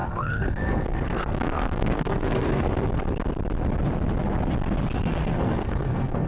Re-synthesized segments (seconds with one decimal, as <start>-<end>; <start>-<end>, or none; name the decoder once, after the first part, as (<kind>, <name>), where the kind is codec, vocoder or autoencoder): 0.0-2.7 (codec, SNAC); 5.2-6.3